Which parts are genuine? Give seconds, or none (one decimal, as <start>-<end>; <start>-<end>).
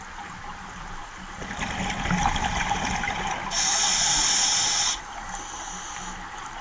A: 1.0-2.4; 3.4-6.6